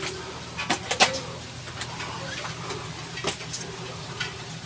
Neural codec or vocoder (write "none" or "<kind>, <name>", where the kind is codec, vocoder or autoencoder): none